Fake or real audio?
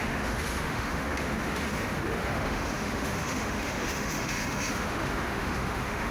fake